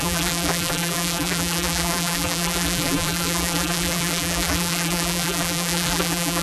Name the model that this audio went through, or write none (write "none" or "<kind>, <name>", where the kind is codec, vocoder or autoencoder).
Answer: vocoder, BigVGAN v2